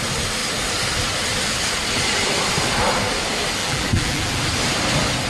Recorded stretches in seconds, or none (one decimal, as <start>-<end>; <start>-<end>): 0.0-3.6; 4.4-5.3